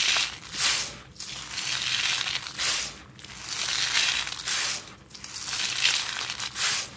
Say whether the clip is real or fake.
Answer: real